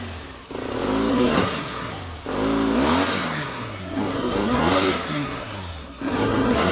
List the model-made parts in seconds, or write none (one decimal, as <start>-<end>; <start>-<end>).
1.1-1.9; 3.1-6.7